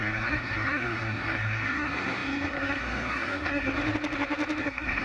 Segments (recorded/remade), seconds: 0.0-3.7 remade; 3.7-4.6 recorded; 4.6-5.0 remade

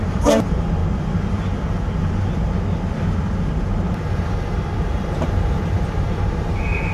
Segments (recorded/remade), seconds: 0.0-0.8 remade; 0.8-4.8 recorded; 4.8-6.9 remade

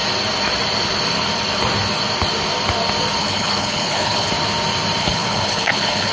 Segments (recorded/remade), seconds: 0.0-3.2 recorded; 3.2-4.3 remade; 4.3-5.0 recorded; 5.0-6.1 remade

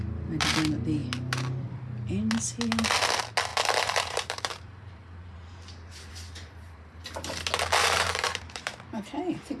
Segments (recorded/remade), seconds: 0.0-3.5 recorded; 3.5-6.1 remade; 6.1-7.8 recorded; 7.8-9.2 remade; 9.2-9.6 recorded

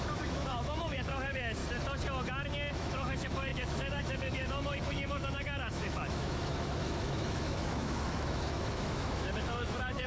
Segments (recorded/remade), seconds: 0.0-1.6 remade; 1.6-2.7 recorded; 2.7-10.1 remade

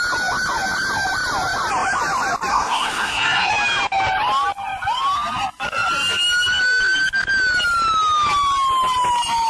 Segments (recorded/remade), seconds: 0.0-2.5 recorded; 2.5-3.5 remade; 3.5-9.5 recorded

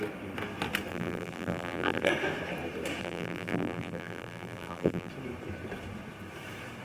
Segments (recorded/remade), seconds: 0.0-0.9 recorded; 0.9-2.1 remade; 2.1-3.0 recorded; 3.0-5.1 remade; 5.1-6.8 recorded

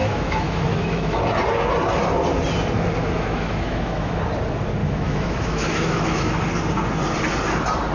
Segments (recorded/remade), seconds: 0.0-1.2 remade; 1.2-3.0 recorded; 3.0-4.2 remade; 4.2-4.8 recorded; 4.8-6.3 remade; 6.3-7.9 recorded